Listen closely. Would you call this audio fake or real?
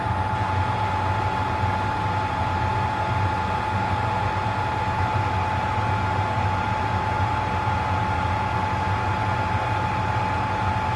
real